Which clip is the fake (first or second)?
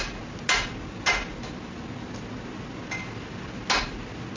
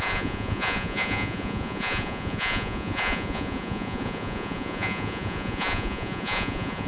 second